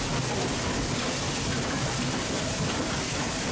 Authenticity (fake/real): fake